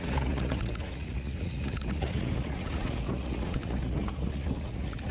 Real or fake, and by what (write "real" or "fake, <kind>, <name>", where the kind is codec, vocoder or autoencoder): fake, vocoder, Vocos